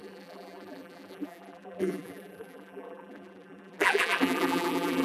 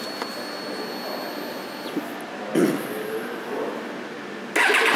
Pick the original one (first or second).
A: second